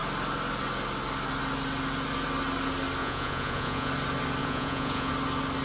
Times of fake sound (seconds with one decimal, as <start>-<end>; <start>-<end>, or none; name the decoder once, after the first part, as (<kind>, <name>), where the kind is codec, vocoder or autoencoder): 3.0-3.9 (vocoder, Vocos); 4.4-5.1